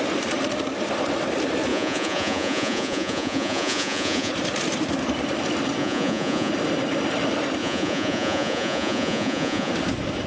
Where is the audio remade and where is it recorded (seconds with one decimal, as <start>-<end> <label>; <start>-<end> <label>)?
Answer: 0.0-1.7 recorded; 1.7-4.3 remade; 4.3-5.8 recorded; 5.8-6.5 remade; 6.5-7.6 recorded; 7.6-9.7 remade; 9.7-10.3 recorded